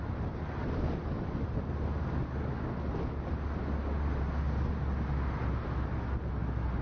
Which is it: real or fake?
real